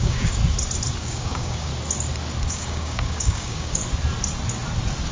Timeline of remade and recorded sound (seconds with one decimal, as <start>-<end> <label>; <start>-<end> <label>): 0.0-0.4 remade; 0.4-1.0 recorded; 1.0-1.7 remade; 1.7-2.5 recorded; 2.5-3.8 remade; 3.8-5.1 recorded